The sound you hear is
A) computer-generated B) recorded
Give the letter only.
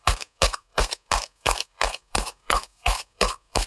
A